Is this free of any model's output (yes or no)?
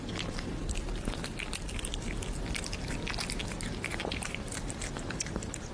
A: yes